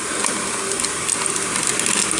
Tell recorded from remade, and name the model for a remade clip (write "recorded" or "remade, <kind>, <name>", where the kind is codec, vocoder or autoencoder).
recorded